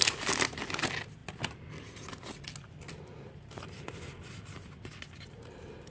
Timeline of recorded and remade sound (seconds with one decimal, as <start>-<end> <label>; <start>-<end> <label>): 0.0-5.9 recorded